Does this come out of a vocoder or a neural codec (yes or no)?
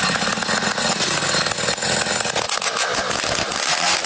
no